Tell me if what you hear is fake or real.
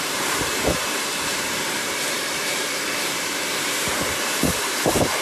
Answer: fake